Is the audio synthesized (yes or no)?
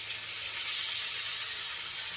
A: no